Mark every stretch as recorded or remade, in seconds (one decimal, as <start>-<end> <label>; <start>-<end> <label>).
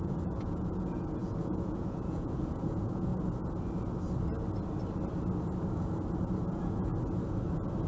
0.0-3.1 remade; 3.1-6.5 recorded; 6.5-6.9 remade; 6.9-7.9 recorded